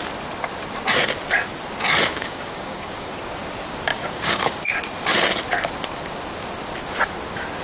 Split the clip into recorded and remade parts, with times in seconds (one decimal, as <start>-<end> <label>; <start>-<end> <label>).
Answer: 0.0-2.1 recorded; 2.1-3.1 remade; 3.1-3.9 recorded; 3.9-4.7 remade; 4.7-7.6 recorded